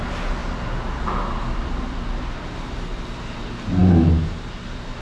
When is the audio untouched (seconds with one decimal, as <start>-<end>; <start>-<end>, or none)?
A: 0.0-5.0